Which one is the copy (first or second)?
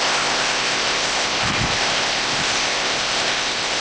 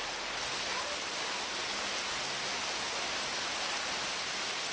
first